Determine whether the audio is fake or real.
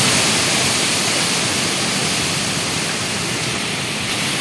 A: real